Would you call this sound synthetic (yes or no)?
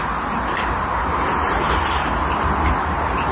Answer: no